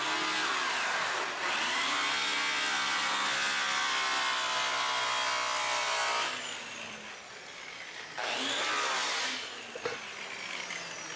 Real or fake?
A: real